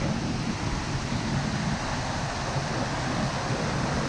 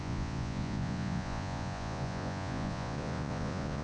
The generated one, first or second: second